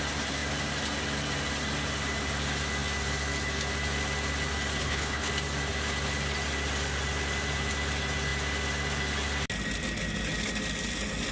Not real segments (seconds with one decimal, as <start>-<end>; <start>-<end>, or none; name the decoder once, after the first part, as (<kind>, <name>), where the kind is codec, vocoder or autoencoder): 4.8-5.3 (codec, HILCodec)